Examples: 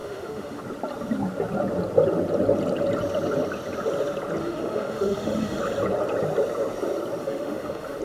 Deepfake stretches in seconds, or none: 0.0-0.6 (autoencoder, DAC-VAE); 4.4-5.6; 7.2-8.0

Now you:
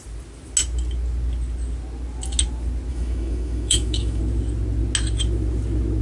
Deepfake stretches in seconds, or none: 2.9-4.2 (autoencoder, DAC-VAE)

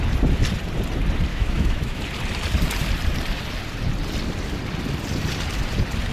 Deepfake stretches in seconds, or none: 1.3-2.0 (autoencoder, DAC-VAE)

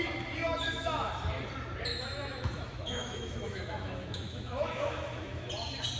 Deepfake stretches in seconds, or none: 0.4-1.1 (autoencoder, DAC-VAE); 1.9-5.5

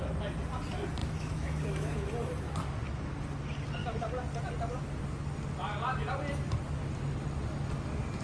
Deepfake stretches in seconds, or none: 1.0-2.1 (autoencoder, DAC-VAE)